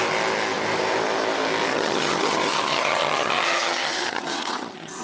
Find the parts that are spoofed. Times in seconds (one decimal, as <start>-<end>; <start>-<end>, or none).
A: 1.7-5.0